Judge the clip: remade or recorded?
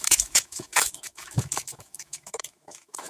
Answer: remade